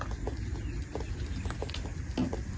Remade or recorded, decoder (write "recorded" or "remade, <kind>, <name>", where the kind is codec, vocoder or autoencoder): recorded